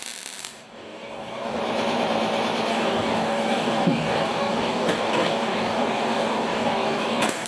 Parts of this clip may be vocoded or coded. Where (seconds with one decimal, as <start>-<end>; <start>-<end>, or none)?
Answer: 0.4-1.6; 2.7-7.5